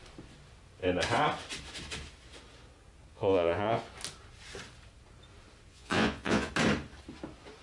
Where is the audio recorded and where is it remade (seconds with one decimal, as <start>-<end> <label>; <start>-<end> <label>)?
0.0-3.1 recorded; 3.1-3.8 remade; 3.8-5.7 recorded; 5.7-6.5 remade; 6.5-7.6 recorded